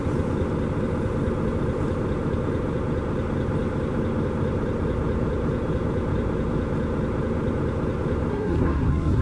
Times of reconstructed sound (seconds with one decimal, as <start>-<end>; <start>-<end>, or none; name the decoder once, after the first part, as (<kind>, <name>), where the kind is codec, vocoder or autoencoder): 8.3-9.2 (codec, SNAC)